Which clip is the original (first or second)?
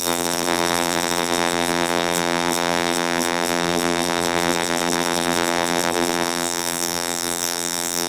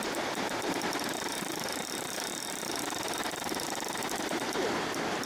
second